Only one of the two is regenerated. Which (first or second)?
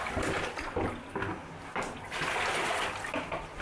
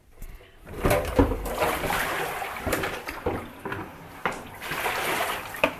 second